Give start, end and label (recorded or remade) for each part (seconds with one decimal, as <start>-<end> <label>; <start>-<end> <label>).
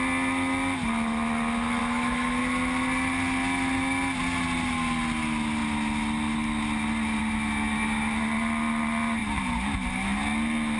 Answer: 0.0-1.8 recorded; 1.8-2.4 remade; 2.4-10.8 recorded